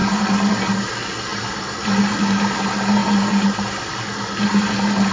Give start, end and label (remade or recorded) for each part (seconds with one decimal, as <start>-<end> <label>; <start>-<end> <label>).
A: 0.0-5.1 recorded